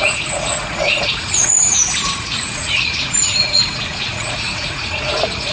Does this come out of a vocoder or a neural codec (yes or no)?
yes